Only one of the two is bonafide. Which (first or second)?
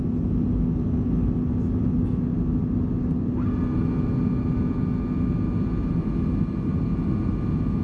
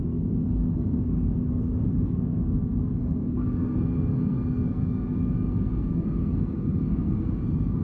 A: first